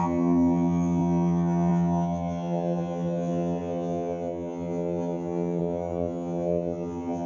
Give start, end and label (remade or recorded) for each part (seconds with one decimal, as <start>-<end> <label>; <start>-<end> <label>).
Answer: 0.0-7.3 remade

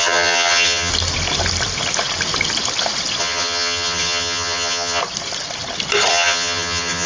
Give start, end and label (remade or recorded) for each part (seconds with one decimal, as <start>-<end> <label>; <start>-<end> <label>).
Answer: 0.0-0.9 remade; 0.9-3.2 recorded; 3.2-5.0 remade; 5.0-6.1 recorded; 6.1-7.1 remade

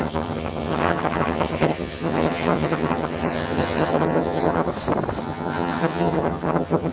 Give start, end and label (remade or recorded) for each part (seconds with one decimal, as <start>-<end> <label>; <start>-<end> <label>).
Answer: 0.0-4.7 remade; 4.7-5.2 recorded; 5.2-6.9 remade

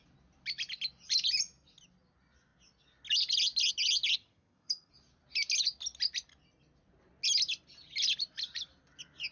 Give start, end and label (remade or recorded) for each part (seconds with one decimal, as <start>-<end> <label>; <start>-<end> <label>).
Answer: 0.0-4.2 recorded; 4.2-4.9 remade; 4.9-9.3 recorded

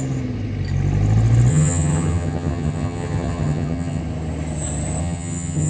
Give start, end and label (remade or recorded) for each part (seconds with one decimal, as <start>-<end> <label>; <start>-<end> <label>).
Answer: 0.0-1.5 recorded; 1.5-4.0 remade; 4.0-5.0 recorded; 5.0-5.7 remade